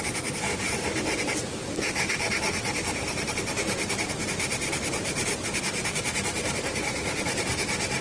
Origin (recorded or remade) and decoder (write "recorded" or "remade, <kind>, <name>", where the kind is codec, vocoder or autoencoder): remade, vocoder, BigVGAN v2